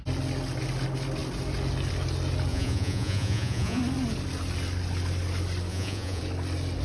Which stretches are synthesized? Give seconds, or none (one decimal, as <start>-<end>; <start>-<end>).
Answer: 2.5-3.8; 5.7-6.2